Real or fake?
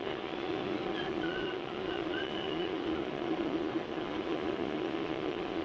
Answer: fake